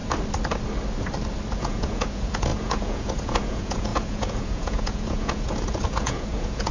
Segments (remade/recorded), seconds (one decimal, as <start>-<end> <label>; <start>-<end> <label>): 0.0-1.6 recorded; 1.6-6.7 remade